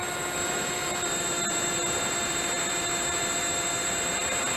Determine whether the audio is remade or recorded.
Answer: remade